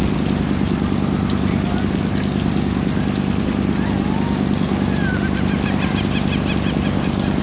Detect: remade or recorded recorded